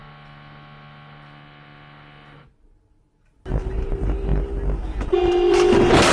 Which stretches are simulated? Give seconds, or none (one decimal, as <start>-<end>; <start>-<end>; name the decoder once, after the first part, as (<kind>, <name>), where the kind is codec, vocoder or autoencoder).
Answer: 3.7-4.3 (vocoder, BigVGAN v2); 5.2-6.1